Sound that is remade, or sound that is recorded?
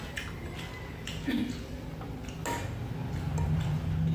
recorded